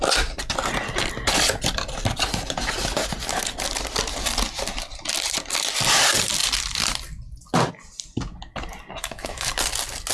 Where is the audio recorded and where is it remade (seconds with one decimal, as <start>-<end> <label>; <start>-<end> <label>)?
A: 0.0-9.0 recorded; 9.0-9.5 remade; 9.5-10.1 recorded